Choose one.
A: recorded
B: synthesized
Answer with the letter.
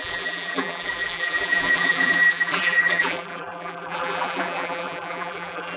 B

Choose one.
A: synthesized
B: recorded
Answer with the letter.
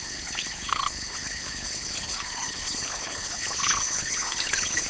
A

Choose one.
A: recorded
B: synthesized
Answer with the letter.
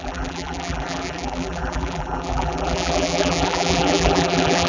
B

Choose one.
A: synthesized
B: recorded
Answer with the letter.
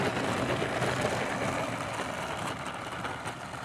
B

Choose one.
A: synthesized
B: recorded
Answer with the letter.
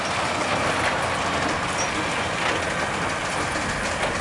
B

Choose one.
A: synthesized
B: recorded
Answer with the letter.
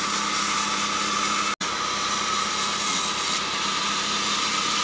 B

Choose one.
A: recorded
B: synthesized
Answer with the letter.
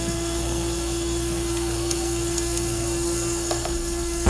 B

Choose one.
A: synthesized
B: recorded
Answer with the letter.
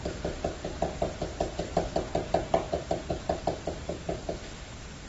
B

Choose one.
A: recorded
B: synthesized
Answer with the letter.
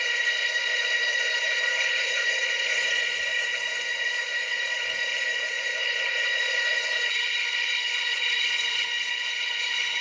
B